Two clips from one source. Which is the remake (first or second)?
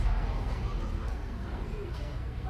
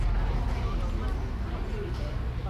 first